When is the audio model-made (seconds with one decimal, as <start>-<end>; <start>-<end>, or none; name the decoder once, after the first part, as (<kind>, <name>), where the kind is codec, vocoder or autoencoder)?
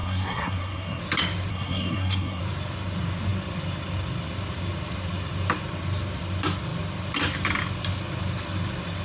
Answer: 0.0-1.0 (codec, SNAC); 1.5-2.4